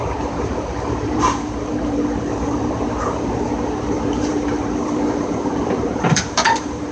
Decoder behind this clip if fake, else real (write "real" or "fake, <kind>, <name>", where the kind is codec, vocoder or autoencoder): fake, vocoder, BigVGAN v2